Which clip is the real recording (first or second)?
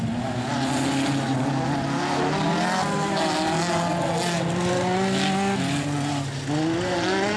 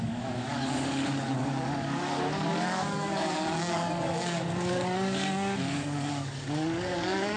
first